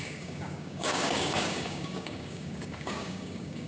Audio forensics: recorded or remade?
remade